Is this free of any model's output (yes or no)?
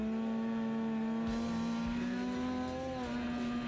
yes